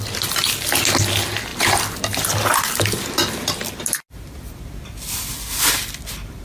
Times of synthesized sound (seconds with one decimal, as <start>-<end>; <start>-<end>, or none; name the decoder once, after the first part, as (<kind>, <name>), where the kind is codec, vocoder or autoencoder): none